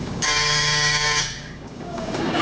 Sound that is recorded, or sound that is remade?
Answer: remade